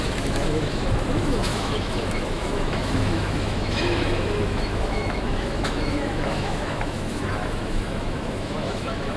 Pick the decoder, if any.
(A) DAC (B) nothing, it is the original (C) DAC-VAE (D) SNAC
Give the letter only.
C